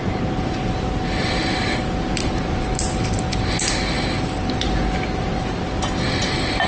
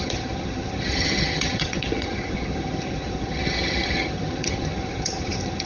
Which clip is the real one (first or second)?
first